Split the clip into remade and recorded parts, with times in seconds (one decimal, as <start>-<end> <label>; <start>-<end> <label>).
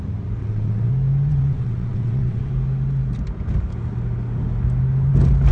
0.0-0.4 recorded; 0.4-0.9 remade; 0.9-1.3 recorded; 1.3-2.5 remade; 2.5-5.5 recorded